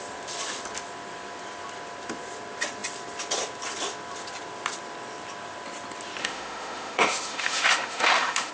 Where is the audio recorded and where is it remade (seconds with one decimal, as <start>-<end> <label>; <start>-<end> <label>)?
0.0-6.2 recorded; 6.2-8.5 remade